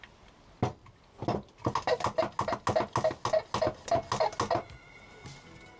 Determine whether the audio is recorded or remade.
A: recorded